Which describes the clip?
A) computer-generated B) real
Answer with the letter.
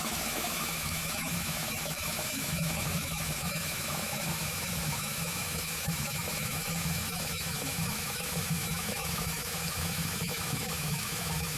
A